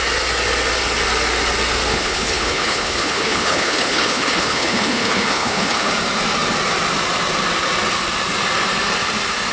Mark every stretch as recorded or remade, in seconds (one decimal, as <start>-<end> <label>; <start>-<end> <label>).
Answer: 0.0-1.9 recorded; 1.9-5.9 remade; 5.9-9.5 recorded